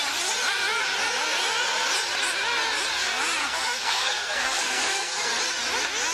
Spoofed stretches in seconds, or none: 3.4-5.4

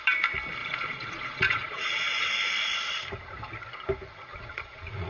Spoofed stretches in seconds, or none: 0.6-2.3; 4.1-5.1

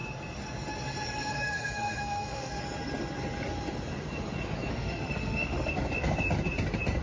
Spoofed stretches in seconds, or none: 1.3-2.6; 4.7-5.7

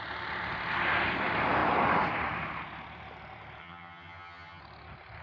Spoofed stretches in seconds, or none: 3.6-4.6

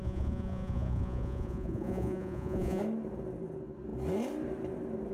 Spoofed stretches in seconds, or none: 0.0-2.8

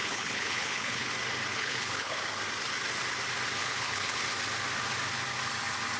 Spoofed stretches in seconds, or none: 0.0-1.1; 1.5-2.2; 3.6-4.2

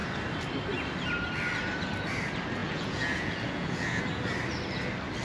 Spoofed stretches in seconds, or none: 2.6-4.0

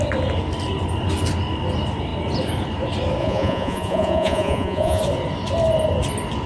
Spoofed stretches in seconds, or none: 3.2-5.0